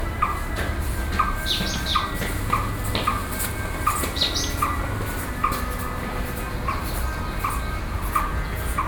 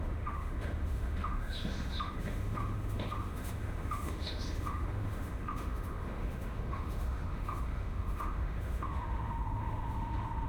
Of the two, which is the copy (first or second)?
second